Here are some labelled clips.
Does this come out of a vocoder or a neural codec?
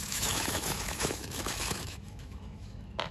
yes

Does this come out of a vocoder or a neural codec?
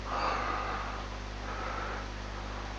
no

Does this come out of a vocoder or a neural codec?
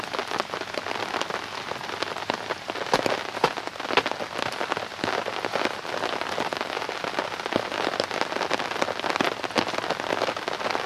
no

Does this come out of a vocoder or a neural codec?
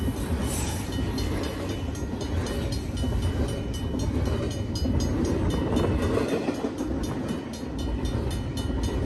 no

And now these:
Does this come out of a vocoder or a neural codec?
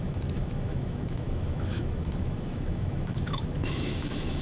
yes